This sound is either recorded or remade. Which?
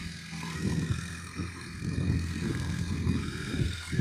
remade